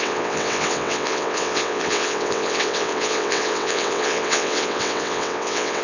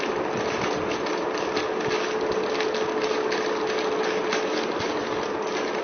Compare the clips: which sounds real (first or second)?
second